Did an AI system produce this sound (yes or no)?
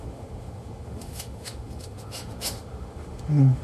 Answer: yes